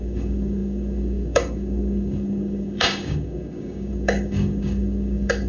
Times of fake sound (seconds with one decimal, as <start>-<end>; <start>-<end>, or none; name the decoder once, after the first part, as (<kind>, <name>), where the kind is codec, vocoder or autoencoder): 0.0-5.5 (codec, DAC)